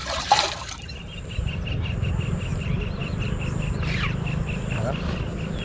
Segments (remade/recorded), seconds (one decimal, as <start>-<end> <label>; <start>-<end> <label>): 0.0-2.1 remade; 2.1-2.5 recorded; 2.5-3.3 remade; 3.3-5.6 recorded